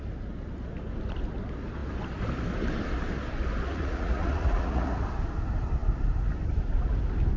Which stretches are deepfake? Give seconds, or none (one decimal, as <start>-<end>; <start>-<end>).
3.7-5.0